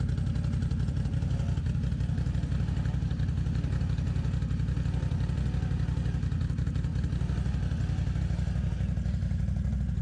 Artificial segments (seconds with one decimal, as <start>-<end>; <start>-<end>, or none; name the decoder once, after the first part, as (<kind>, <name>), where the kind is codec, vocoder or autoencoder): none